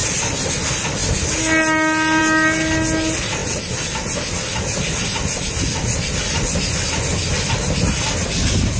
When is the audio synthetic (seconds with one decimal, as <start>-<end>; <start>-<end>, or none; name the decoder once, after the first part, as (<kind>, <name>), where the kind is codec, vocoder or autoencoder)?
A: 0.0-0.5 (vocoder, BigVGAN v2)